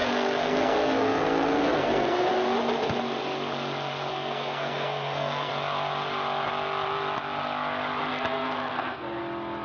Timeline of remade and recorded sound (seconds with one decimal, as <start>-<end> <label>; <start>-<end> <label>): 0.0-2.3 remade; 2.3-4.1 recorded; 4.1-5.5 remade; 5.5-8.1 recorded; 8.1-9.2 remade; 9.2-9.6 recorded